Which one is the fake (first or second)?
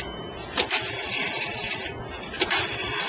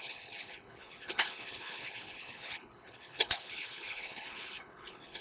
second